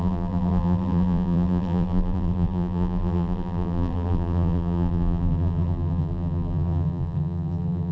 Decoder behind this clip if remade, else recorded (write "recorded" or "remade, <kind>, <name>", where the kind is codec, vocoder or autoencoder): remade, vocoder, BigVGAN v2